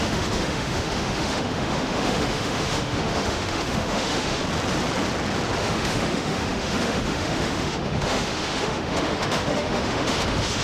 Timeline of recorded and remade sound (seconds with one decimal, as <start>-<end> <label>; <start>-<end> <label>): 0.0-4.4 remade; 4.4-5.6 recorded; 5.6-10.6 remade